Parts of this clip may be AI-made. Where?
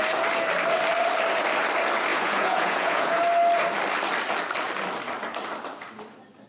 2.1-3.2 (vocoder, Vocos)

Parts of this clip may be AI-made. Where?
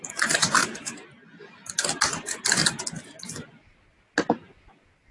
none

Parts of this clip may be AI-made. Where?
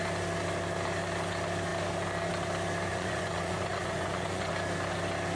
2.9-4.5 (vocoder, Vocos)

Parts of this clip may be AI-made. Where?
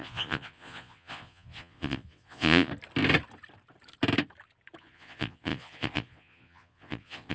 0.0-2.7 (vocoder, Vocos); 4.8-7.3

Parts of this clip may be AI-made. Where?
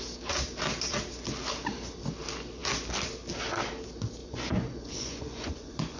4.2-6.0 (vocoder, Vocos)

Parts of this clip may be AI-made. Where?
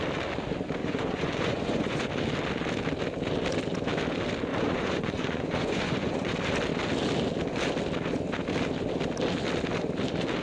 0.8-2.1 (vocoder, Vocos); 4.5-6.3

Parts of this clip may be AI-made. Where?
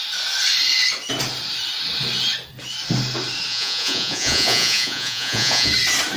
3.5-5.7 (vocoder, Vocos)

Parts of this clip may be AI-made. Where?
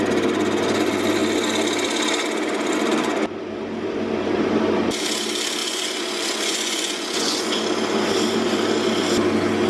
5.6-7.6 (vocoder, Vocos)